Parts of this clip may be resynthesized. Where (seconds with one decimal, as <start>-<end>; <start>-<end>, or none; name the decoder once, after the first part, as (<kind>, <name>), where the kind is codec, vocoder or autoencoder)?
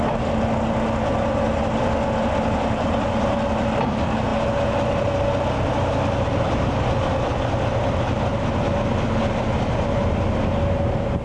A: none